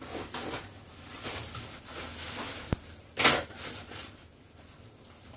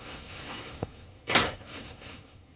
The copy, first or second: second